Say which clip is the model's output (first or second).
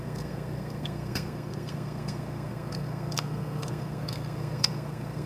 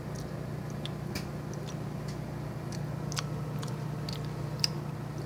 first